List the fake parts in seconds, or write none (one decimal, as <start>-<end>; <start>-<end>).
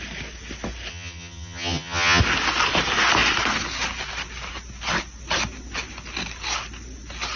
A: 0.9-2.2